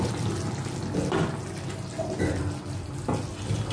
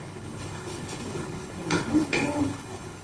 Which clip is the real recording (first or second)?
first